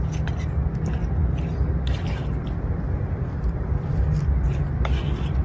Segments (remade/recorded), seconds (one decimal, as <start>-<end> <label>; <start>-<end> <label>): 0.0-5.4 recorded